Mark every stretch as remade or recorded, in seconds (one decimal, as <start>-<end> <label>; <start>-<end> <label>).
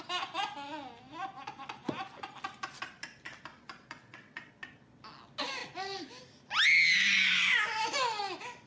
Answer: 0.0-3.5 recorded; 3.5-4.5 remade; 4.5-8.7 recorded